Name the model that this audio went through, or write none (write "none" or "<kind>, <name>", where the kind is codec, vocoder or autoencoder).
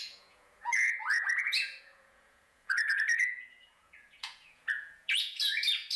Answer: vocoder, Vocos